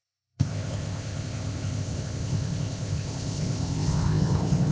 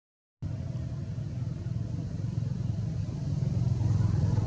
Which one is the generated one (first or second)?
first